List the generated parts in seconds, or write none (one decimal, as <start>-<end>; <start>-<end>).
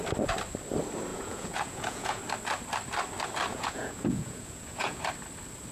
1.1-2.2; 3.5-5.0